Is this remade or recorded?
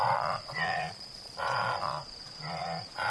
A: remade